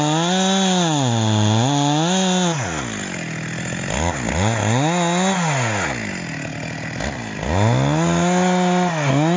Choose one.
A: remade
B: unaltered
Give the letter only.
B